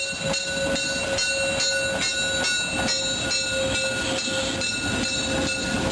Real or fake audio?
real